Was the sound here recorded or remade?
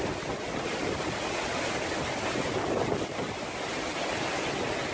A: recorded